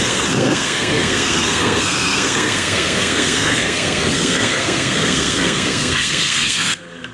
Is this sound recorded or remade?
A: remade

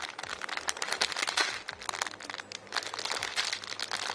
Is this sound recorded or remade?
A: recorded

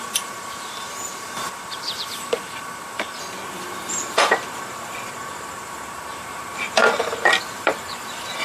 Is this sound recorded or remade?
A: remade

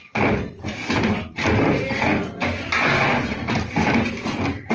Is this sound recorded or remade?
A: recorded